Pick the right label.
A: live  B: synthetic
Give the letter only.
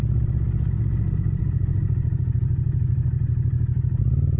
A